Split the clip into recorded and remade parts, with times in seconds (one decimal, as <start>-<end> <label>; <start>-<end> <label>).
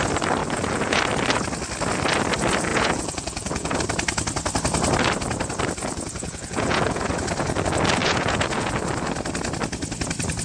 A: 0.0-0.4 recorded; 0.4-1.0 remade; 1.0-2.7 recorded; 2.7-3.8 remade; 3.8-5.8 recorded; 5.8-7.1 remade; 7.1-8.0 recorded; 8.0-8.7 remade; 8.7-10.4 recorded